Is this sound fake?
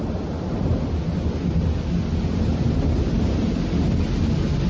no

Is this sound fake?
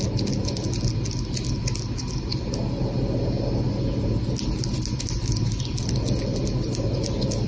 no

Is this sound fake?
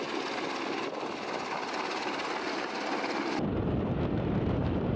no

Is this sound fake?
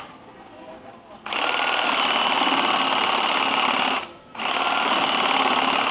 no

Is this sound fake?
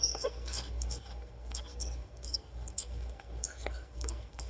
yes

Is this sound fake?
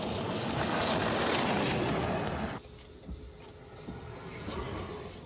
no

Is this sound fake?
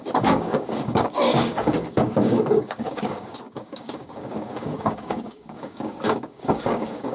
yes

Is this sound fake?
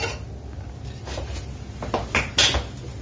no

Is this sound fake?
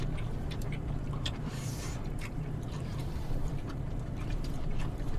yes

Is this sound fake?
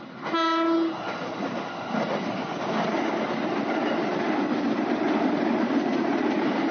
no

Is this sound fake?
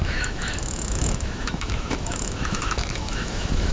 yes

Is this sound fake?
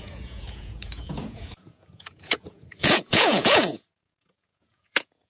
yes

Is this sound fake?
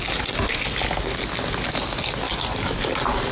no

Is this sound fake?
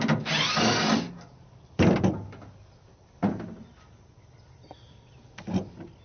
no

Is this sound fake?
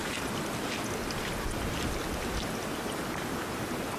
no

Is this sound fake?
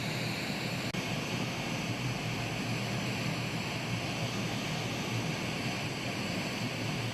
no